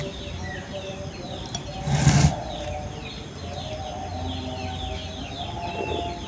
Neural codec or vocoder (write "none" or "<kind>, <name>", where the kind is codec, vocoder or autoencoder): none